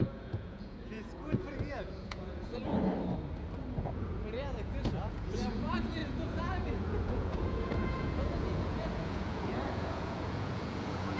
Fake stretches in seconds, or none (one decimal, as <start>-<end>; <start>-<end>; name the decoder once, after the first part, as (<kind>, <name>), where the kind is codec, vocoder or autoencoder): 0.0-2.6 (vocoder, Vocos); 3.8-11.2